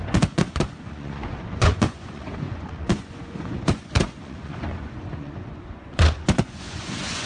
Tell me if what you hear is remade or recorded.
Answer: remade